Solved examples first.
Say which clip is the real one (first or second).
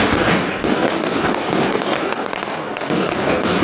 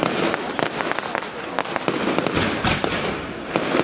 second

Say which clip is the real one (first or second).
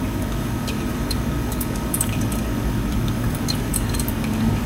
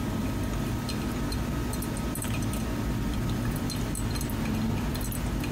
second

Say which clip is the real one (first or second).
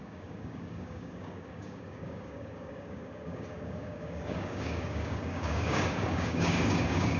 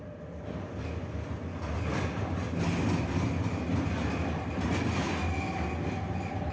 second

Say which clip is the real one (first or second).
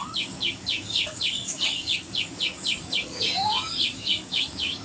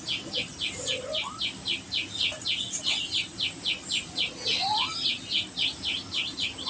second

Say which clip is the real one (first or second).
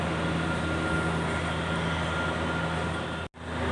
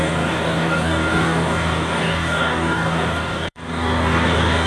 first